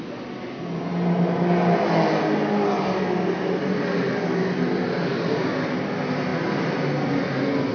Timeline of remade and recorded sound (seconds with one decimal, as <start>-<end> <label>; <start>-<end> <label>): 0.0-7.7 recorded